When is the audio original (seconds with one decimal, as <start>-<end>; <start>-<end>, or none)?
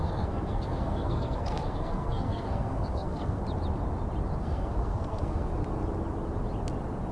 3.4-4.4; 5.5-7.1